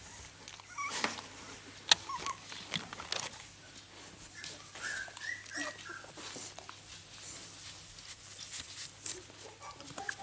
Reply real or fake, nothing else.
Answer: real